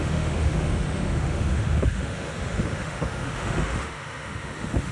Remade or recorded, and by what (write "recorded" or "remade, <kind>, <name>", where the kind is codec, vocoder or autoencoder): remade, autoencoder, DAC-VAE